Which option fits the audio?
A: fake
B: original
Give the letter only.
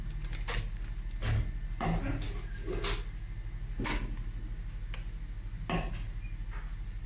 B